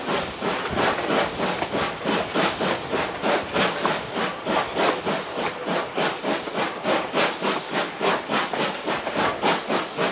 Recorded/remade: recorded